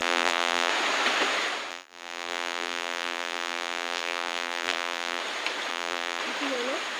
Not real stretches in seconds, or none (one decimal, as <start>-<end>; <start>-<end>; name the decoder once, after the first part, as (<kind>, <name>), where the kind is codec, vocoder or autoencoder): 0.0-0.7 (vocoder, BigVGAN v2); 1.7-5.2; 5.7-6.2